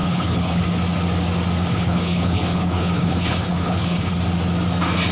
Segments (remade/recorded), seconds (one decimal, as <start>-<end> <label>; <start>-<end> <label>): 0.0-0.6 remade; 0.6-1.7 recorded; 1.7-4.2 remade; 4.2-5.1 recorded